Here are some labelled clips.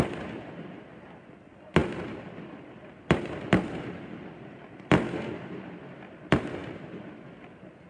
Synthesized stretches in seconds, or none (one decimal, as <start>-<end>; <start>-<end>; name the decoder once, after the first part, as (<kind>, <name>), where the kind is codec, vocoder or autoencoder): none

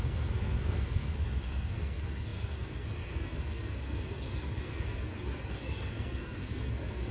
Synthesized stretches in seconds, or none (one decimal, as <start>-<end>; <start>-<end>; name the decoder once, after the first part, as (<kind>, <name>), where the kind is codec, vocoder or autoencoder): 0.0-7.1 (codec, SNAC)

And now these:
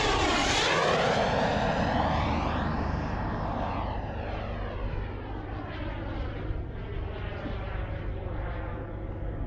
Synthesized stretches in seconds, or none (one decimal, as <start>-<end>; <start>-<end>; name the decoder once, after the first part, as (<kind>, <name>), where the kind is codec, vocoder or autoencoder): none

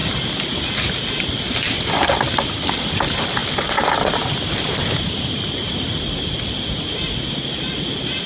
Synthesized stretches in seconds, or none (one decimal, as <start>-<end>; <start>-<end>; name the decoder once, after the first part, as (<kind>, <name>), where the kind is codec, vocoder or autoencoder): none

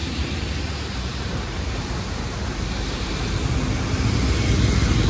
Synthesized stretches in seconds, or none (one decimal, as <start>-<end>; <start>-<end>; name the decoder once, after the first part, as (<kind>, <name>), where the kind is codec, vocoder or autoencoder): 0.0-3.1 (vocoder, BigVGAN v2)

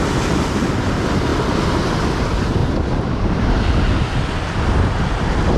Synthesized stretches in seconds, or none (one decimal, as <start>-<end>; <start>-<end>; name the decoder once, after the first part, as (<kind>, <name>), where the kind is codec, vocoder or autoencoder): 2.6-3.7 (vocoder, BigVGAN v2)

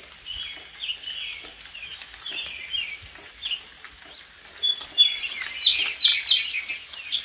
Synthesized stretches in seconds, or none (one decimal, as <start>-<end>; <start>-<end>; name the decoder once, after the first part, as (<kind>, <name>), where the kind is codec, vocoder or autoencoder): none